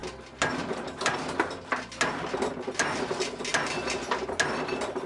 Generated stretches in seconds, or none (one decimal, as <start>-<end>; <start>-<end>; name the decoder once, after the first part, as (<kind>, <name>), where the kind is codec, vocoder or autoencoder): none